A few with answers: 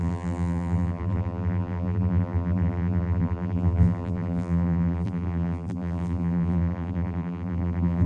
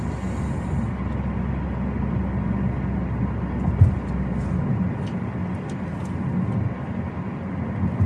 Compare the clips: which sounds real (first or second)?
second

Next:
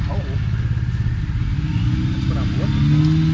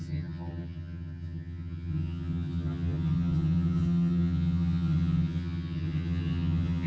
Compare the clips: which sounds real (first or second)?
first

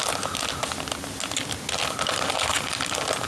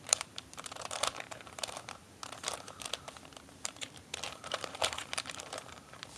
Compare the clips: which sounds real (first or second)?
first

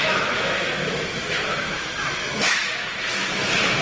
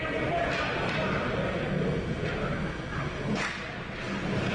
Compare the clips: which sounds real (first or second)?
second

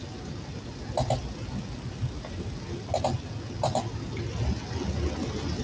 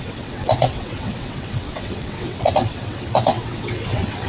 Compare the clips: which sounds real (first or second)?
first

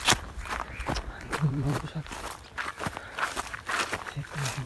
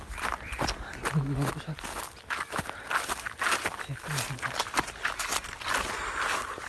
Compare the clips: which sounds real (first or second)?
second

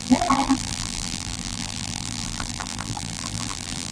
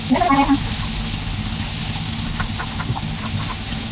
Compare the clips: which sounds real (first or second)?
second